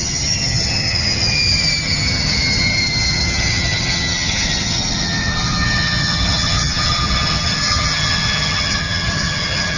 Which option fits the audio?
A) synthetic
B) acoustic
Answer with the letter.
A